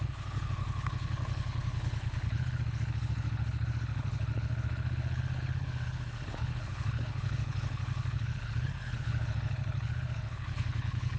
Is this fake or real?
fake